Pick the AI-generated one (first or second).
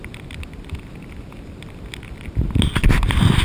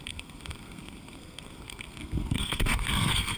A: second